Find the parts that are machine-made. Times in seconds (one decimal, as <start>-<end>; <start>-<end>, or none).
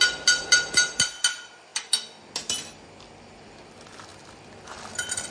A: none